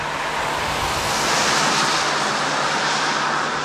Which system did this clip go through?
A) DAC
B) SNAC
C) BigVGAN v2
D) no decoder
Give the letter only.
D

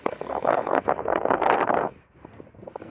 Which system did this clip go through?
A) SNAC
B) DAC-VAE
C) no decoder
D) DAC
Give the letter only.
A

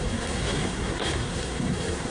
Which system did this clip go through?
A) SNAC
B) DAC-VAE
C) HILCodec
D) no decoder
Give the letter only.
A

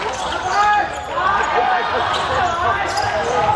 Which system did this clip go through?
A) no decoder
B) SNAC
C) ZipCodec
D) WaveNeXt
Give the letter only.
A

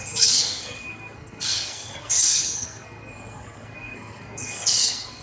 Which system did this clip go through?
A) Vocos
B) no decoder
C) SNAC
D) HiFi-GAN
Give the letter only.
C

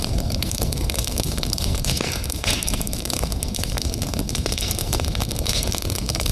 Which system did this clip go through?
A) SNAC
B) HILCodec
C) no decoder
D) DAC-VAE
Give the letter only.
A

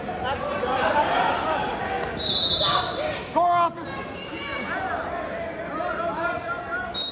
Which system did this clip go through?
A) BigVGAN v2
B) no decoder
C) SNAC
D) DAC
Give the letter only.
B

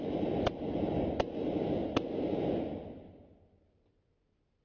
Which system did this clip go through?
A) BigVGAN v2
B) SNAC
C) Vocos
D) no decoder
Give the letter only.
D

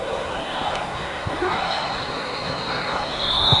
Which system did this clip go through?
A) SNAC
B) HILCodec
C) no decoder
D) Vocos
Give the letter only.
A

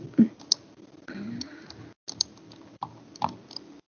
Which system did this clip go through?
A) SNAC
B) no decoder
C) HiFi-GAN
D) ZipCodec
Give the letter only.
B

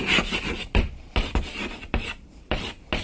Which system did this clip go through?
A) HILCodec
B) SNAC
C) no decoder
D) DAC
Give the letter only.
C